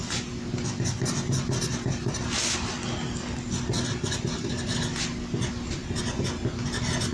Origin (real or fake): real